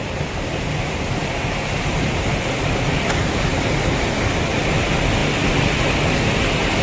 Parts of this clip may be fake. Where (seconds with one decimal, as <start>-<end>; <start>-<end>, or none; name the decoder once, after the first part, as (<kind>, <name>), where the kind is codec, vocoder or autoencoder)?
none